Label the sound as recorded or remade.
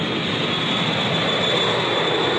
recorded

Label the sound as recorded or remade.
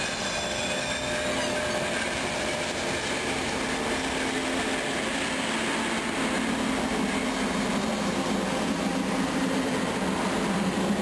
recorded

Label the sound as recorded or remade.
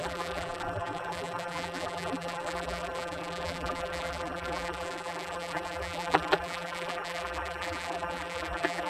remade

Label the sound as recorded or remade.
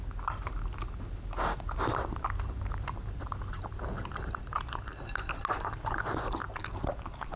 recorded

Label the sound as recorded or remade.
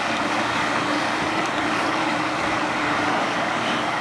remade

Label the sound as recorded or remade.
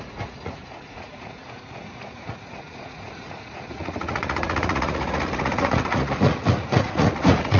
remade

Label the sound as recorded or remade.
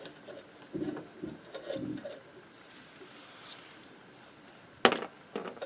recorded